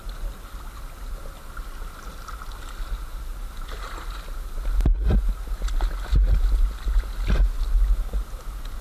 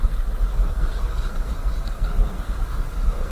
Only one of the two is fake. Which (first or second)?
second